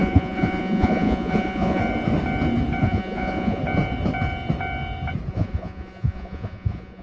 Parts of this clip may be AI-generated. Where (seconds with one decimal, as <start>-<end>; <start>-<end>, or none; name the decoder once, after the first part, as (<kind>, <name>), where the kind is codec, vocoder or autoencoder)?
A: 0.0-1.8 (vocoder, Vocos); 2.8-3.6; 5.3-7.0